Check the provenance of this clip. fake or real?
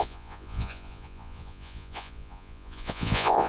fake